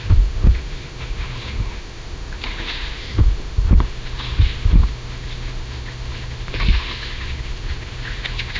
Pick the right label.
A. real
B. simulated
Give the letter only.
B